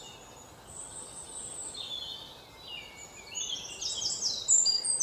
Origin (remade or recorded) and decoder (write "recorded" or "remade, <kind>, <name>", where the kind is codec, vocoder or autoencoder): recorded